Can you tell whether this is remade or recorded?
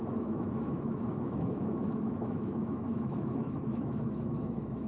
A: remade